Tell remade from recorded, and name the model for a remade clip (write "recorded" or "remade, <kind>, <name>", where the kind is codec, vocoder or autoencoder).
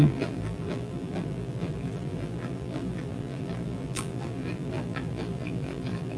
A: remade, vocoder, BigVGAN v2